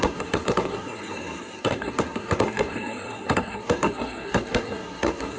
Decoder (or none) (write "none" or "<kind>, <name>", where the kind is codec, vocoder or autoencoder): codec, SNAC